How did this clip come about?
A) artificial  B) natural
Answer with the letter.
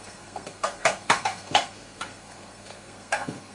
A